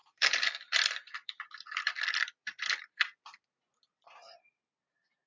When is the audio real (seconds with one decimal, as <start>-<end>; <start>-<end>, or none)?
3.2-5.3

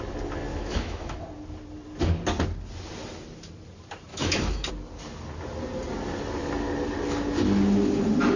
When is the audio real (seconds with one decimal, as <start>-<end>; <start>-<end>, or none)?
0.0-0.5; 1.2-4.1; 4.7-8.4

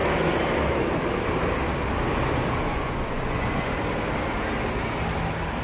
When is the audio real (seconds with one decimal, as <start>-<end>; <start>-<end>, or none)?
0.0-2.7; 3.7-5.6

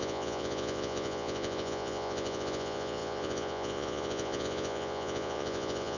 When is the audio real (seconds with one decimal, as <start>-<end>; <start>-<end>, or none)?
none

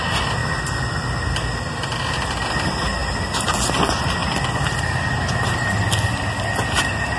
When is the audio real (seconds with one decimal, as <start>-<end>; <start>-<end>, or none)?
0.0-3.0; 3.5-7.2

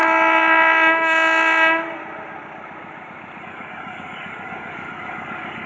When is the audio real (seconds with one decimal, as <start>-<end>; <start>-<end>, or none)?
0.0-3.4

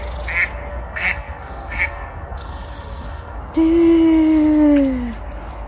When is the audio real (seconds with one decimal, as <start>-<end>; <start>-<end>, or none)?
0.0-0.7; 3.4-5.7